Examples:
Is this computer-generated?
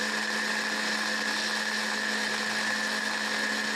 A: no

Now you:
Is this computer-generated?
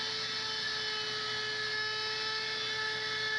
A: no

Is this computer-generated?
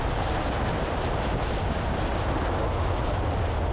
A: no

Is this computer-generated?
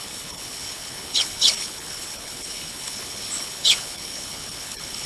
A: yes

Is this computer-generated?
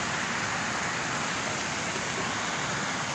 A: no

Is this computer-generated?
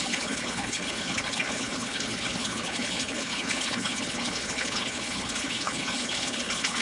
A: yes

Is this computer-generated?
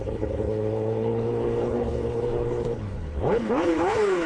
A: yes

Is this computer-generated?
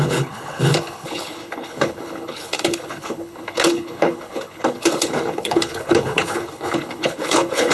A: yes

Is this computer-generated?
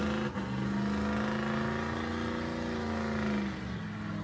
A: no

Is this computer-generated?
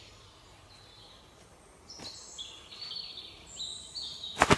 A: no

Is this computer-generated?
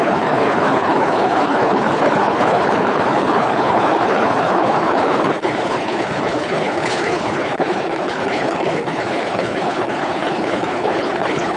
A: yes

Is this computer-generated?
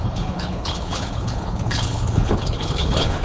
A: yes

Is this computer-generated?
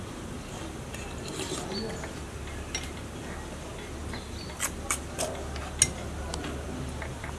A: no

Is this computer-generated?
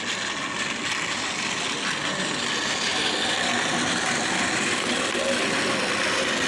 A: no